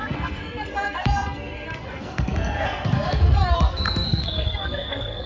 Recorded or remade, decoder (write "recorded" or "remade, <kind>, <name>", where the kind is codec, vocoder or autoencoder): remade, codec, SNAC